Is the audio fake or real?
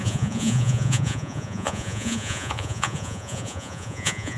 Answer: fake